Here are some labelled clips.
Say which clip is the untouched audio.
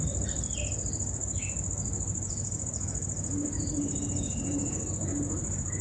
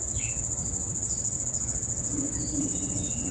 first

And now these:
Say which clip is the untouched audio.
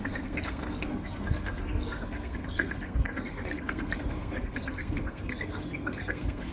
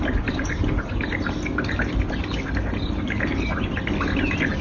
second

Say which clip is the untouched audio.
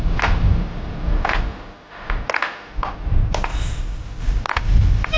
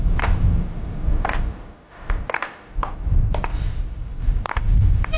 first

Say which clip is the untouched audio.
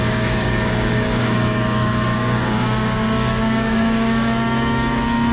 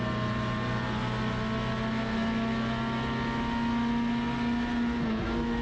second